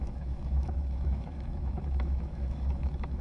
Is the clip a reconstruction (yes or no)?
yes